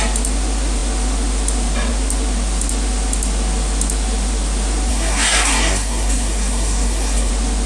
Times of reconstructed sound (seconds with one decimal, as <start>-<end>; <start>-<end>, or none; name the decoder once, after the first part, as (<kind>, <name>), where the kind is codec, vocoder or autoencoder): 4.9-7.3 (codec, SNAC)